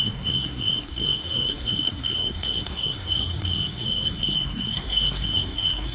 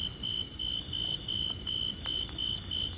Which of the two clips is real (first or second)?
second